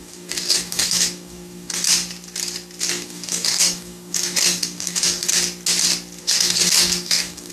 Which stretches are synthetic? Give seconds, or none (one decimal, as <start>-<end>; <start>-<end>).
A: 0.0-1.9; 2.9-5.3; 6.2-7.5